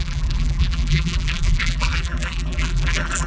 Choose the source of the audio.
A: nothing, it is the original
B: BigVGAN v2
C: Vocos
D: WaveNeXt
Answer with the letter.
B